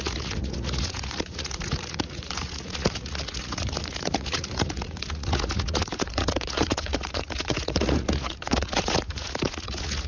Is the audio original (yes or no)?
no